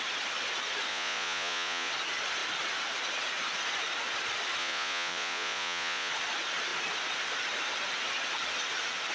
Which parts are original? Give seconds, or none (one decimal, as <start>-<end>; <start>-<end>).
0.0-0.9; 1.9-4.6; 6.1-9.1